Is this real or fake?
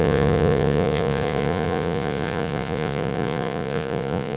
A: fake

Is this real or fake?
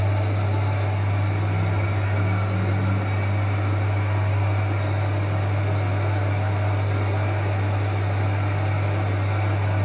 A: real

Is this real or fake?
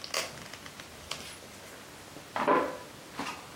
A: real